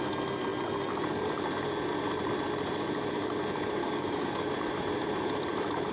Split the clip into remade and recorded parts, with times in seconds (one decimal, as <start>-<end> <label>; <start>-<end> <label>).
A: 0.0-3.8 recorded; 3.8-4.5 remade; 4.5-5.9 recorded